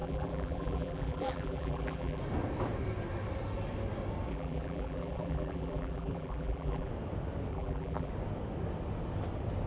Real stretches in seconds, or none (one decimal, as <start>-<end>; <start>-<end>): 2.2-4.3; 6.9-7.5; 8.1-9.7